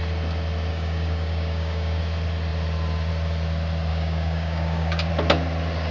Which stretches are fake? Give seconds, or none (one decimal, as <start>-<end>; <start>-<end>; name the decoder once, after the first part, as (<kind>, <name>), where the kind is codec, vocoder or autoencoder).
0.7-2.0 (codec, DAC); 3.9-5.1